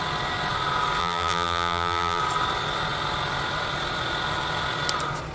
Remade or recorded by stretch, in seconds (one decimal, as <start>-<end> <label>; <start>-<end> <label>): 0.0-1.0 recorded; 1.0-2.2 remade; 2.2-5.3 recorded